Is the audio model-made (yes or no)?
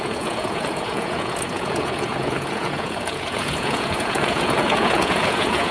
yes